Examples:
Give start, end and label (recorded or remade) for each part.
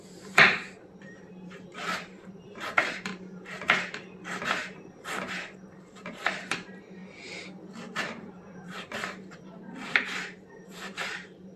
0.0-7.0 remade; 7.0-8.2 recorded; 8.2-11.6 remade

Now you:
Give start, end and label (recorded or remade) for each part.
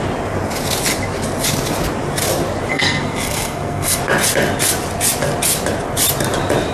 0.0-2.7 recorded; 2.7-4.0 remade; 4.0-6.7 recorded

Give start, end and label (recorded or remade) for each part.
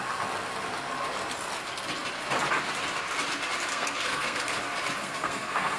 0.0-3.7 recorded; 3.7-4.6 remade; 4.6-5.0 recorded; 5.0-5.8 remade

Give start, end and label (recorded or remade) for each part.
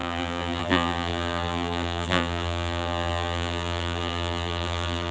0.0-5.1 remade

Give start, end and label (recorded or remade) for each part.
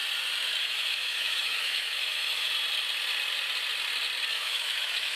0.0-0.6 recorded; 0.6-2.5 remade; 2.5-4.3 recorded; 4.3-5.2 remade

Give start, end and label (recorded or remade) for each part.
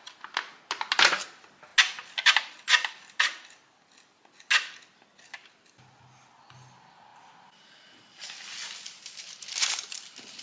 0.0-10.4 recorded